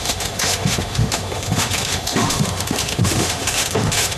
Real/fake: fake